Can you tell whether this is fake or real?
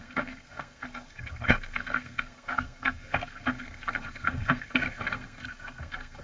fake